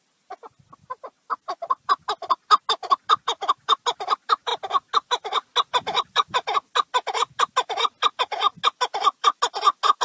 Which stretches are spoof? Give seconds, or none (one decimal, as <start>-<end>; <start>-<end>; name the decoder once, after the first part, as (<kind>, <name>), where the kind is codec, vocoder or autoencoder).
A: none